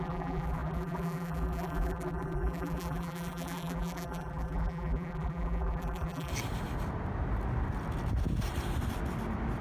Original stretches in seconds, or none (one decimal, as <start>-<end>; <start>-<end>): 6.3-9.6